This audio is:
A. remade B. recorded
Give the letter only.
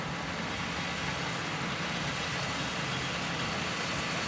B